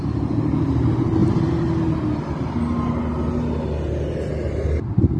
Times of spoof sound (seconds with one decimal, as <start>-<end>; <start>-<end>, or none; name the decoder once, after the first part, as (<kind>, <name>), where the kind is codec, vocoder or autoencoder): none